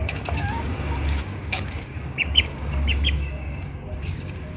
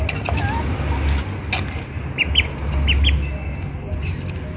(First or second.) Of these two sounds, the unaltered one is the second